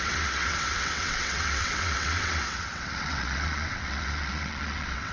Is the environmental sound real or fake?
fake